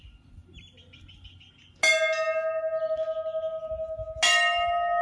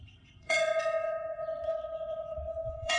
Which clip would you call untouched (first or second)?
first